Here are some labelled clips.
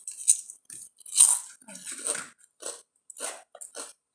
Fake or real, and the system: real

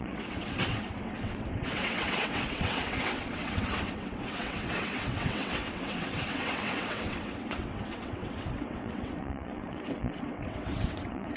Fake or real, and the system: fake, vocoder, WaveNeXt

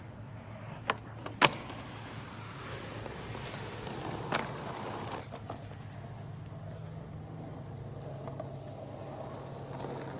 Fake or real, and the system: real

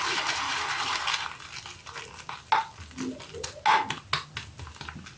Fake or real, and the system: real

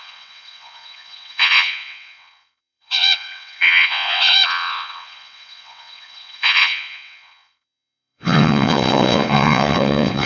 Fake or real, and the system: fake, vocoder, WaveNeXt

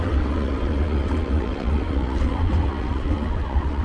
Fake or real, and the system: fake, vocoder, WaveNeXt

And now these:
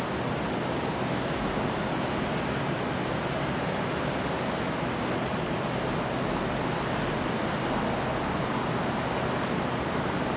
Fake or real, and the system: real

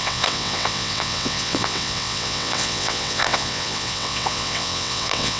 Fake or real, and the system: fake, vocoder, WaveNeXt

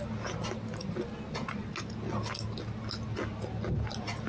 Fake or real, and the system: real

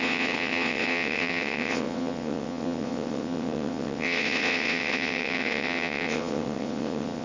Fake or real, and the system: fake, vocoder, WaveNeXt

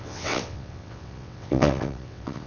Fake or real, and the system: fake, vocoder, WaveNeXt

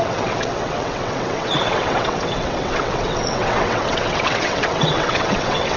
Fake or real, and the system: fake, vocoder, WaveNeXt